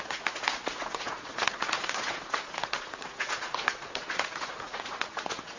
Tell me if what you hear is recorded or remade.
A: remade